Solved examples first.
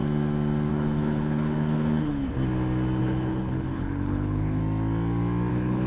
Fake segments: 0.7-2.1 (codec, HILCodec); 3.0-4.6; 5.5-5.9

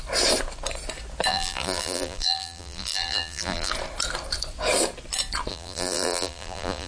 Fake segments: 1.3-3.7 (vocoder, BigVGAN v2); 5.5-6.9

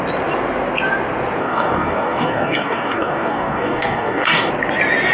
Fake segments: 1.4-4.5 (codec, DAC)

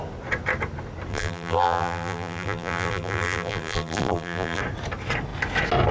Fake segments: 1.1-4.6 (vocoder, BigVGAN v2)

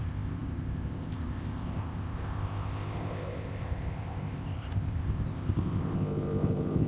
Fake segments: 0.0-6.9 (codec, ZipCodec)

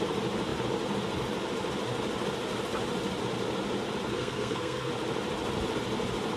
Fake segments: 4.1-4.9 (codec, SNAC)